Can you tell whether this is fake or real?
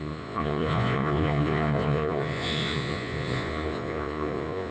fake